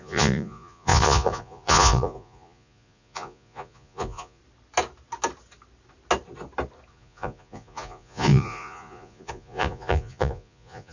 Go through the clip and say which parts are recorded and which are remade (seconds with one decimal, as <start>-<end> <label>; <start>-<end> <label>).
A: 0.0-4.4 remade; 4.4-6.9 recorded; 6.9-10.9 remade